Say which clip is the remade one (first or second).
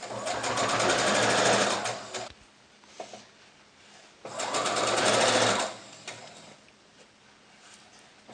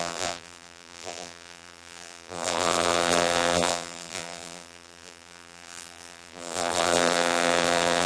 second